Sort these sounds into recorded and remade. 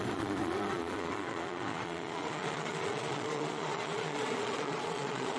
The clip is remade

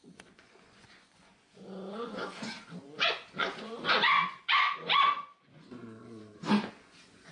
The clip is remade